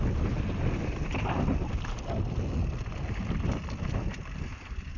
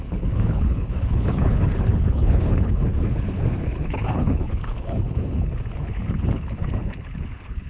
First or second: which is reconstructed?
second